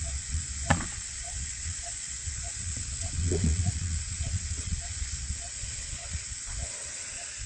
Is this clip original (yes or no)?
no